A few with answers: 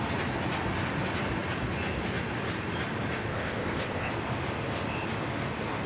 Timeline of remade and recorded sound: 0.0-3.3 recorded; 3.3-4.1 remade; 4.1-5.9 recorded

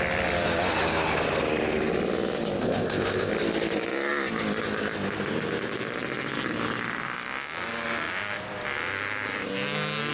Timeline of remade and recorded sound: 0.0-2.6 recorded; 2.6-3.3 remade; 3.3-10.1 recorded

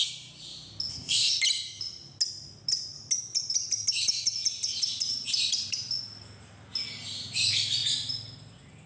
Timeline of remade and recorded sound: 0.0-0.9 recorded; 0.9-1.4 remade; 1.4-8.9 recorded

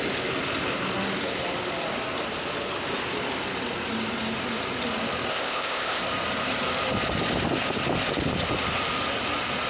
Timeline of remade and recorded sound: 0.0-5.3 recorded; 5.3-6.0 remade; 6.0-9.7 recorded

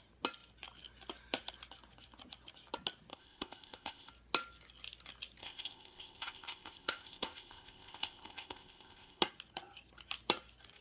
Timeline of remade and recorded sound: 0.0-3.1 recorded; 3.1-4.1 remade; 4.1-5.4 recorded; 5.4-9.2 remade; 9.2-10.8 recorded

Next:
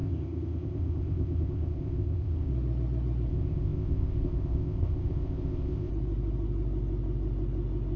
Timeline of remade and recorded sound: 0.0-2.5 remade; 2.5-3.3 recorded; 3.3-5.9 remade; 5.9-8.0 recorded

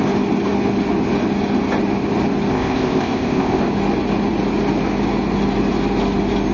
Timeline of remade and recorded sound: 0.0-2.5 recorded; 2.5-3.6 remade; 3.6-6.5 recorded